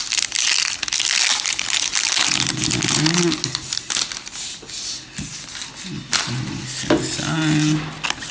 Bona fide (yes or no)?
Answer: yes